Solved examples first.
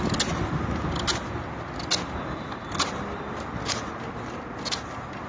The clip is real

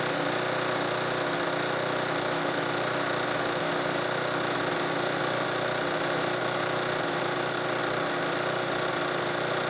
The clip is real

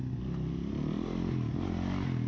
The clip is real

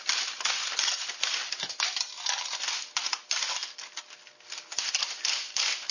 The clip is real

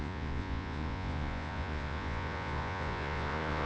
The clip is fake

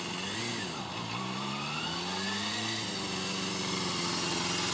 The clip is real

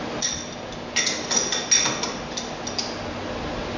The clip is real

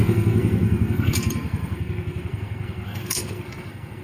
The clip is fake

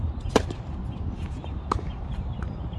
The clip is real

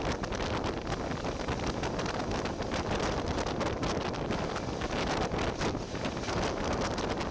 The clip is real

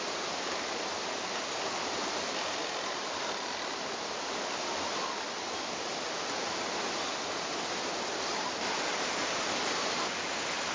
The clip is real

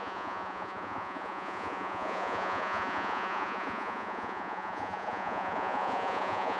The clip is fake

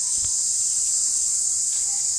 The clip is fake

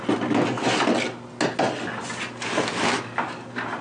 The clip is real